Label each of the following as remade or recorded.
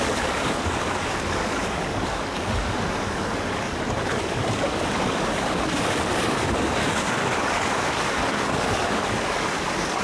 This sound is remade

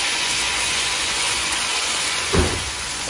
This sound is remade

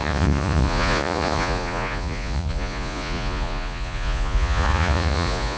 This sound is remade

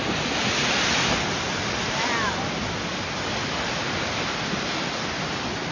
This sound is recorded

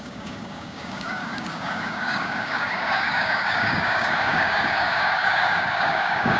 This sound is remade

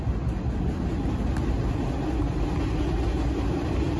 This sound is recorded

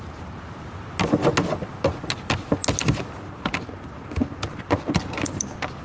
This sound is recorded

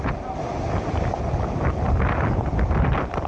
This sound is recorded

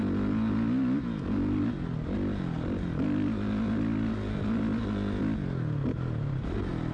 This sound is recorded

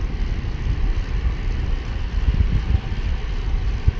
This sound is recorded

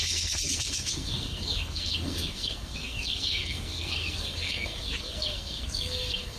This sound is remade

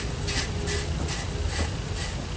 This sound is recorded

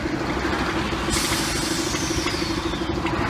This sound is recorded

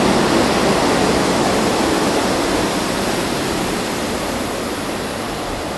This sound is recorded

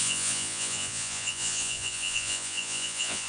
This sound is remade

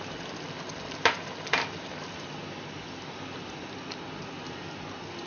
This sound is recorded